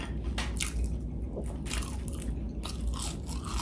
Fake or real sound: real